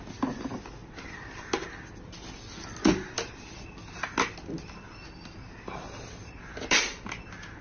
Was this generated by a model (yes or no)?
no